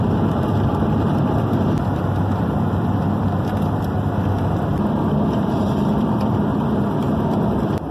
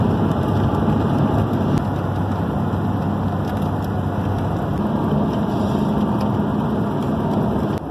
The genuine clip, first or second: second